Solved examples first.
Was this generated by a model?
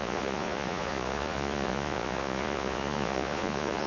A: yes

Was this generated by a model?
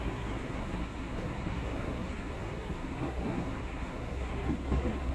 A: yes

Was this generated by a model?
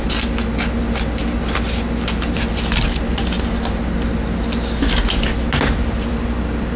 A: no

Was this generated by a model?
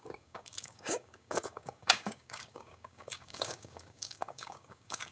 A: yes